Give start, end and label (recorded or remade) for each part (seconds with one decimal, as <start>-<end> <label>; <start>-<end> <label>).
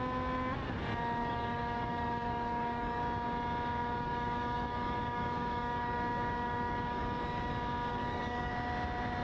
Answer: 0.0-1.2 recorded; 1.2-3.0 remade; 3.0-3.8 recorded; 3.8-7.5 remade; 7.5-7.9 recorded; 7.9-8.5 remade; 8.5-9.2 recorded